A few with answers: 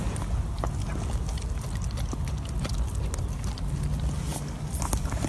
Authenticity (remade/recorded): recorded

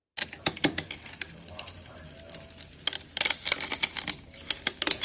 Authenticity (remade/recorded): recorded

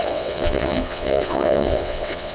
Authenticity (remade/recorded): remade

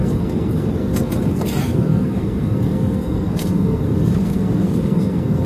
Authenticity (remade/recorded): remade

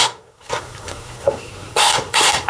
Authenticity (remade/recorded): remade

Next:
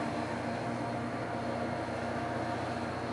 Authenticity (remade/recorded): recorded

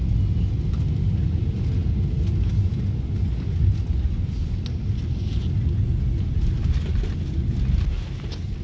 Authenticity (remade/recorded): recorded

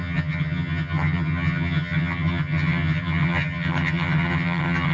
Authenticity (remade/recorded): remade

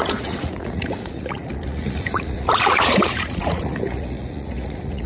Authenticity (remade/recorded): remade